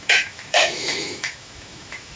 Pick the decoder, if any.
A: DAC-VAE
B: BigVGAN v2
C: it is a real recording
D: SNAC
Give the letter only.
A